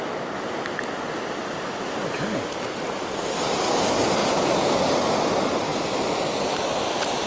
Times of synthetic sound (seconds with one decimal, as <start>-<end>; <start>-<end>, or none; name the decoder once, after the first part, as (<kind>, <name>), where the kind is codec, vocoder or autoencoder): 4.2-4.7 (vocoder, Vocos)